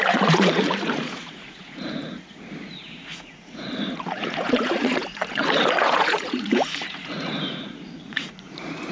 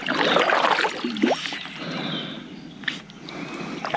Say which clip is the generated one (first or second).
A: first